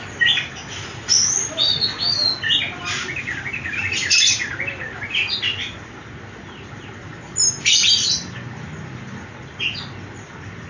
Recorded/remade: recorded